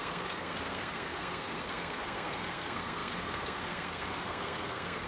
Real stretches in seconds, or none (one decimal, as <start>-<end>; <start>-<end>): none